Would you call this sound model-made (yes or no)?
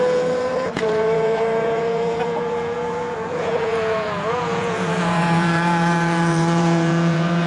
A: yes